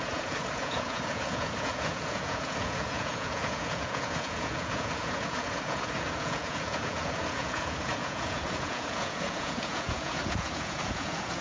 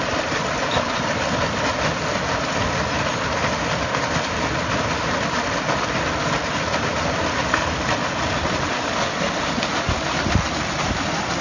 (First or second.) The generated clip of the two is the first